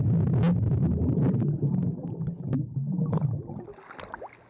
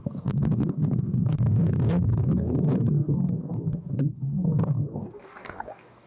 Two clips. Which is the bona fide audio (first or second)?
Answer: first